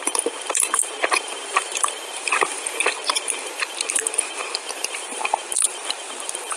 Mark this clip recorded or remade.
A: remade